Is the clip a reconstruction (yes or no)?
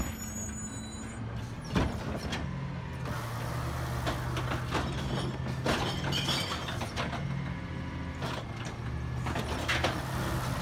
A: no